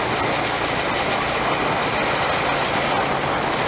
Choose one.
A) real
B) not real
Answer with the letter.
A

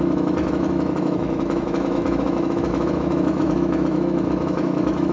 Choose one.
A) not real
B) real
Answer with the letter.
A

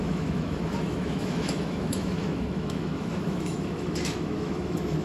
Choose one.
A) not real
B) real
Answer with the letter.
A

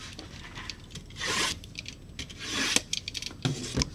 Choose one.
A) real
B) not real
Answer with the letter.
A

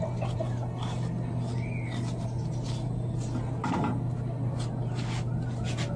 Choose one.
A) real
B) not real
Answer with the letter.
A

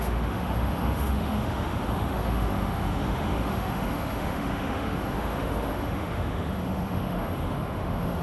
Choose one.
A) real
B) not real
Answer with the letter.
B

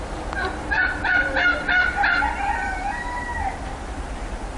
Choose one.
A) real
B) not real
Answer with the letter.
A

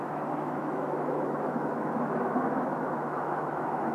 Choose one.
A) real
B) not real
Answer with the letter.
B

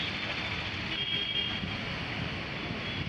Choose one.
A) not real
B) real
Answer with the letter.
B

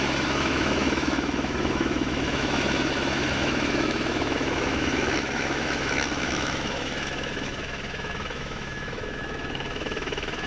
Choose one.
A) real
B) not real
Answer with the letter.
B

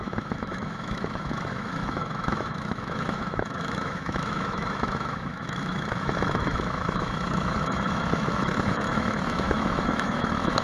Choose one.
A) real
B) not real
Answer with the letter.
B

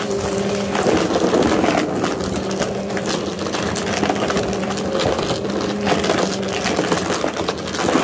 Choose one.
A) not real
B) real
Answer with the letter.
B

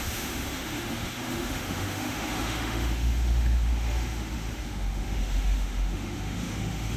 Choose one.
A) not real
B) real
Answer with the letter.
A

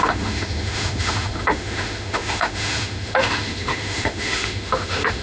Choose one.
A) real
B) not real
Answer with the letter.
B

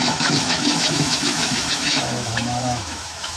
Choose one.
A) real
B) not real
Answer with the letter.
B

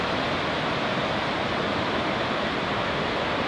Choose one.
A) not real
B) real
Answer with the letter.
B